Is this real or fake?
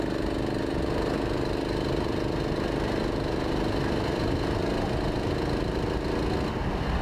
real